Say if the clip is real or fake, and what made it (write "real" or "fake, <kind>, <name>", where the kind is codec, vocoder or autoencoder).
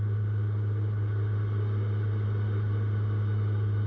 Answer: real